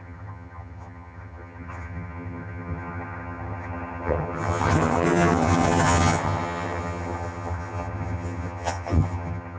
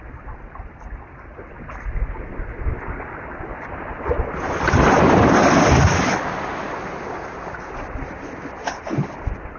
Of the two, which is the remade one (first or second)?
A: first